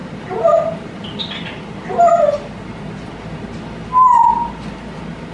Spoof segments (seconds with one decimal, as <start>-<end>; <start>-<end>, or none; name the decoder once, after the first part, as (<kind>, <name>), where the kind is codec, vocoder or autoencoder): 0.0-1.2 (vocoder, BigVGAN v2)